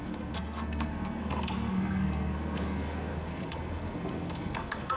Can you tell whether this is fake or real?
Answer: fake